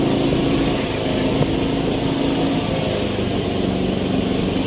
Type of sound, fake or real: real